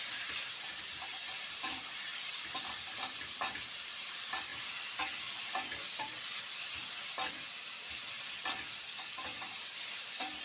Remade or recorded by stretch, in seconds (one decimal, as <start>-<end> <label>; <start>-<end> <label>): 0.0-2.1 remade; 2.1-3.7 recorded; 3.7-4.5 remade; 4.5-8.9 recorded; 8.9-10.4 remade